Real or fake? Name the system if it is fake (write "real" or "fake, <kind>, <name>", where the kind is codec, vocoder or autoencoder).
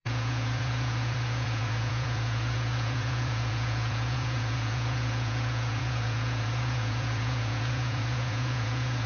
fake, vocoder, Vocos